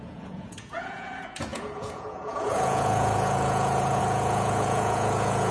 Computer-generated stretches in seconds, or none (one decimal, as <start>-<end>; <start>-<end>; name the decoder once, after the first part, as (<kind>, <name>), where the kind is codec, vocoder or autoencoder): 0.0-5.5 (vocoder, Vocos)